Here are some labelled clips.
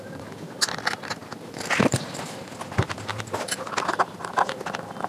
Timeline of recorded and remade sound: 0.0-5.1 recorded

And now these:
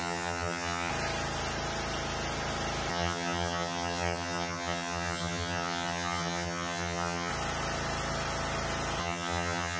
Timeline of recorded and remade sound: 0.0-0.9 remade; 0.9-2.9 recorded; 2.9-7.3 remade; 7.3-9.0 recorded; 9.0-9.8 remade

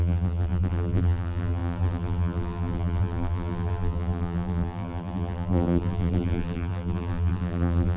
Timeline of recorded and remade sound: 0.0-8.0 remade

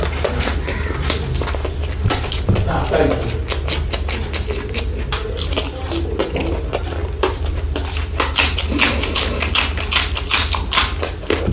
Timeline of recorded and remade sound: 0.0-11.5 recorded

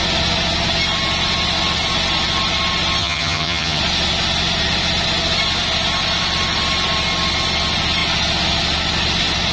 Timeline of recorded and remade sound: 0.0-3.0 recorded; 3.0-3.8 remade; 3.8-9.5 recorded

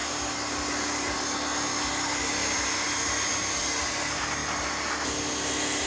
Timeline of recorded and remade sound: 0.0-5.9 recorded